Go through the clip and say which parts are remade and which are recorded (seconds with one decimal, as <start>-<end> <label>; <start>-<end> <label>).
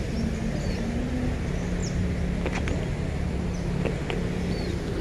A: 0.0-5.0 recorded